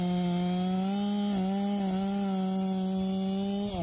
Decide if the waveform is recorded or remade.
recorded